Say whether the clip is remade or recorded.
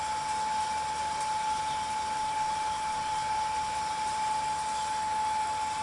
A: recorded